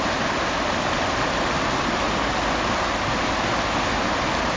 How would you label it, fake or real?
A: real